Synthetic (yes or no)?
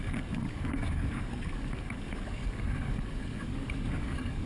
yes